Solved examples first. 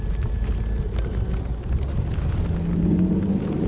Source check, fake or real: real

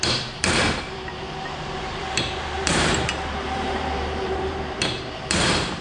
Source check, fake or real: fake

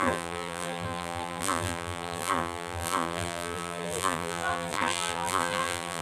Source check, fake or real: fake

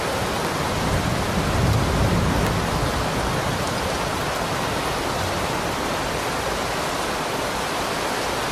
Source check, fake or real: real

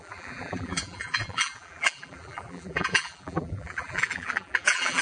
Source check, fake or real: fake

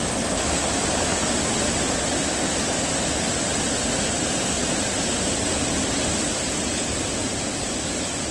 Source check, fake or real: real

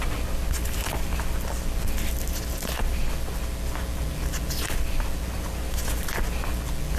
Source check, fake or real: real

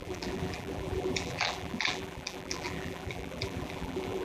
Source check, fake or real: fake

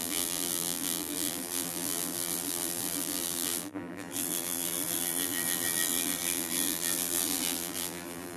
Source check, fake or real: fake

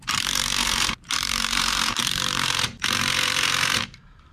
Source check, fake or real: fake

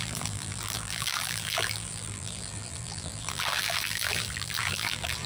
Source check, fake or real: fake